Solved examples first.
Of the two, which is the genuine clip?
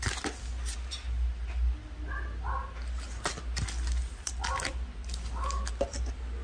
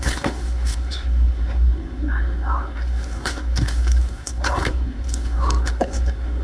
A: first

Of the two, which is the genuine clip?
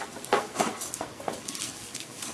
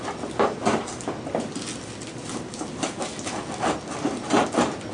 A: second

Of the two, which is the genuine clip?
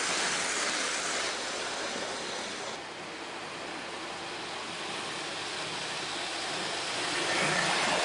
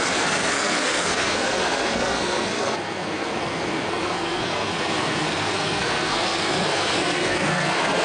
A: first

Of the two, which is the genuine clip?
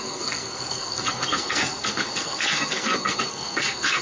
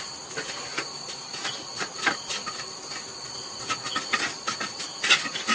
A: second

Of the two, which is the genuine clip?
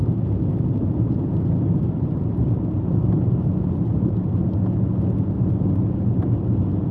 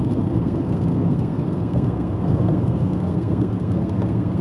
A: first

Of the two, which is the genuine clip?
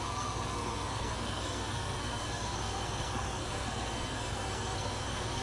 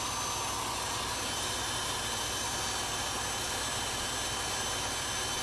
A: second